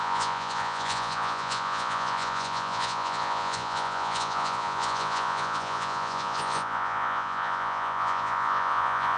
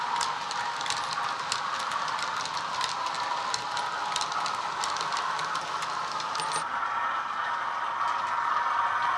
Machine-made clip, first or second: first